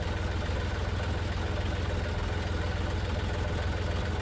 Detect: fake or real real